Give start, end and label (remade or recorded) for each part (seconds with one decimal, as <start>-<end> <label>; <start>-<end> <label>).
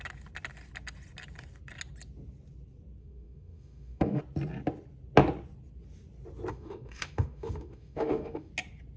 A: 0.0-3.0 recorded; 3.0-4.2 remade; 4.2-6.5 recorded; 6.5-8.5 remade; 8.5-9.0 recorded